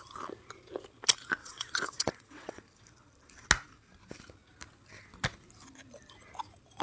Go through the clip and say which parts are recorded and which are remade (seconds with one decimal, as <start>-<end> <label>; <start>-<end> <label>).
0.0-1.4 recorded; 1.4-2.6 remade; 2.6-6.8 recorded